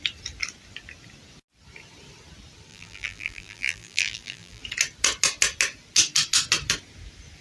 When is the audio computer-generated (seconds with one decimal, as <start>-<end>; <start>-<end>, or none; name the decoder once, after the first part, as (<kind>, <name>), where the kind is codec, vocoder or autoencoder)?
2.7-4.6 (vocoder, BigVGAN v2)